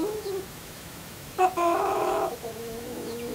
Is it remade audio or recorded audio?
remade